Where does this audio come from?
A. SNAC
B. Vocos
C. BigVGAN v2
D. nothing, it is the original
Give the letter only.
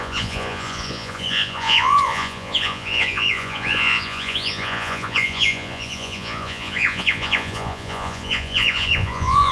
B